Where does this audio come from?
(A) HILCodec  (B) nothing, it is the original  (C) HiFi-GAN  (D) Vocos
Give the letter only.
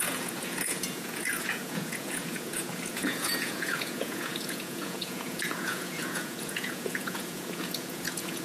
D